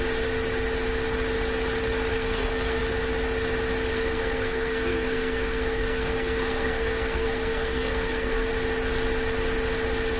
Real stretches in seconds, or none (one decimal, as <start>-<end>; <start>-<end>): 0.0-2.1; 2.8-3.9; 8.5-10.2